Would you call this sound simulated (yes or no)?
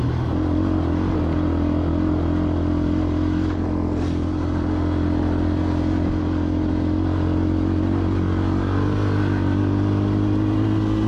no